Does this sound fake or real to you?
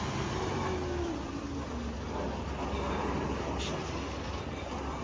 real